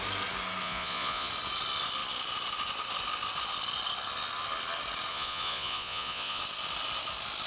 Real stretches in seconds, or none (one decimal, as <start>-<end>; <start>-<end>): 0.0-0.6; 1.3-5.1; 6.4-7.5